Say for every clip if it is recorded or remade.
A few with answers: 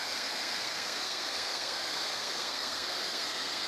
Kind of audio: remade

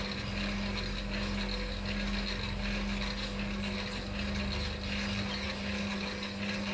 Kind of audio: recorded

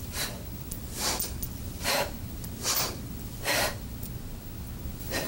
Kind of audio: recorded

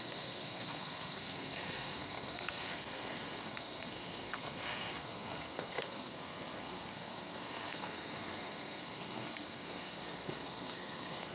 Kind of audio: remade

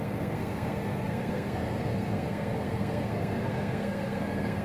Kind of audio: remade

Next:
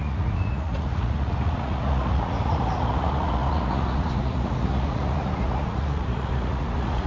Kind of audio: remade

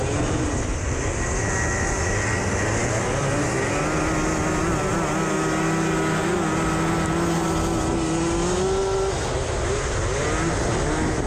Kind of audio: recorded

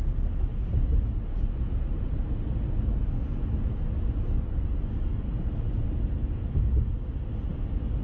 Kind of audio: recorded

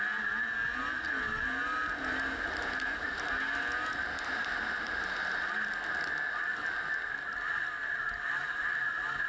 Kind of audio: recorded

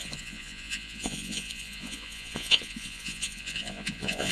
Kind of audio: remade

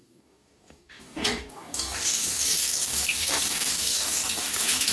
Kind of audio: remade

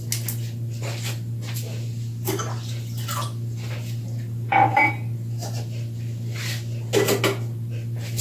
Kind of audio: recorded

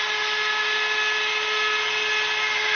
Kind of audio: recorded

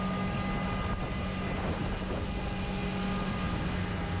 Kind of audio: recorded